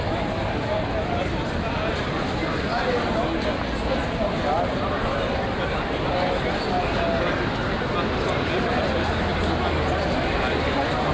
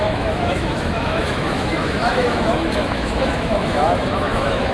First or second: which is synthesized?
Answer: second